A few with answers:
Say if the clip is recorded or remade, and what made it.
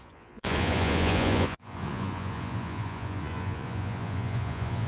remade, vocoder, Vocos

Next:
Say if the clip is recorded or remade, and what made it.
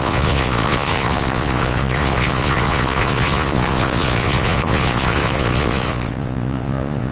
remade, vocoder, Vocos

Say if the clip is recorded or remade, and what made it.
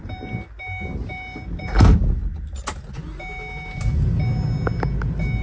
recorded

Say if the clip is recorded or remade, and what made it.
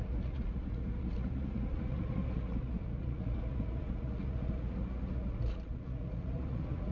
remade, vocoder, Vocos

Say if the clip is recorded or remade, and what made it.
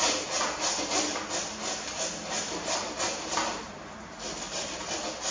recorded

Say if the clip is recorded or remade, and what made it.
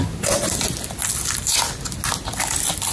recorded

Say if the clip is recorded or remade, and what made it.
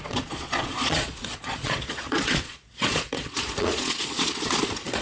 remade, vocoder, Vocos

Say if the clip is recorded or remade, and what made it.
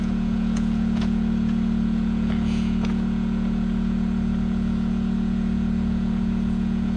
remade, vocoder, Vocos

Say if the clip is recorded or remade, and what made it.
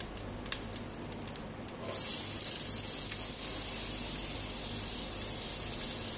recorded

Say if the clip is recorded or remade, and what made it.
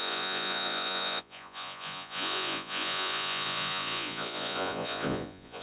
remade, vocoder, Vocos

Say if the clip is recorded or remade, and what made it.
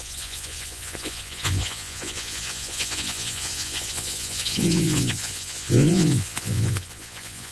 remade, vocoder, Vocos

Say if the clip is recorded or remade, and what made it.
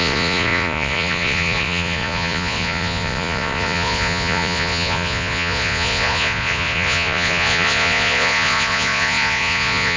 remade, vocoder, Vocos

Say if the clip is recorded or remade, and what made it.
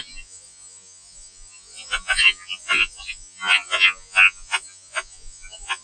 remade, vocoder, Vocos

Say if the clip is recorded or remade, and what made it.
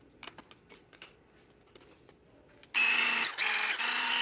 recorded